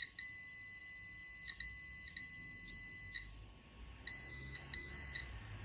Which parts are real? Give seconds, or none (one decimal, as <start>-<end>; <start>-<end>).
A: 0.0-4.3; 4.9-5.6